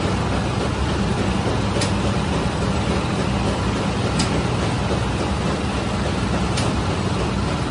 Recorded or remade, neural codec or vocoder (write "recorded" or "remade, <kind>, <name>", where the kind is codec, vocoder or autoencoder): recorded